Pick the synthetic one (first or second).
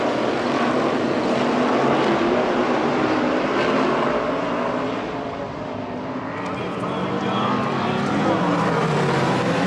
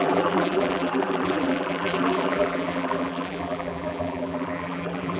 second